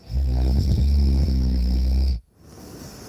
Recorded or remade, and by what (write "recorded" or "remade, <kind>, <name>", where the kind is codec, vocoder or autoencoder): remade, codec, SNAC